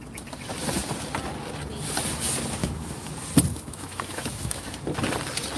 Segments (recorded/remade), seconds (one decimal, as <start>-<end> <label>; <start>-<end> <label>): 0.0-2.6 recorded; 2.6-3.1 remade; 3.1-3.5 recorded; 3.5-4.7 remade; 4.7-5.6 recorded

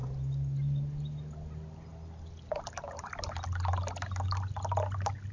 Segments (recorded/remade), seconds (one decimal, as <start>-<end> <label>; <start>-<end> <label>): 0.0-5.3 recorded

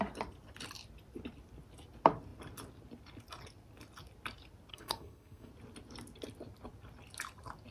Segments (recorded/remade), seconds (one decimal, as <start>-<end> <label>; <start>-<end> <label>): 0.0-4.7 recorded; 4.7-5.5 remade; 5.5-7.7 recorded

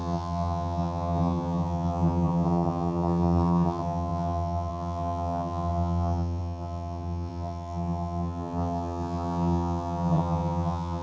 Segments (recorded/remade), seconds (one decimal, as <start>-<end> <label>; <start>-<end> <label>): 0.0-11.0 remade

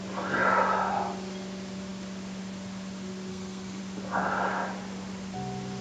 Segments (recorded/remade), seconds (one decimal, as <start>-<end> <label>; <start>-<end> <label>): 0.0-3.3 recorded; 3.3-3.8 remade; 3.8-5.8 recorded

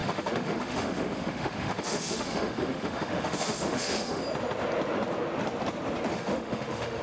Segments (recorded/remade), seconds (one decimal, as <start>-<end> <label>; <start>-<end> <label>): 0.0-4.2 remade; 4.2-6.1 recorded; 6.1-7.0 remade